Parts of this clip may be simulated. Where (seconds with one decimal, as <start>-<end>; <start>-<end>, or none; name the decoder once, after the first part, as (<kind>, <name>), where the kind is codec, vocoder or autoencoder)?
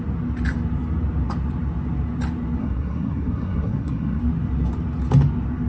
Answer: 2.6-4.2 (codec, SNAC)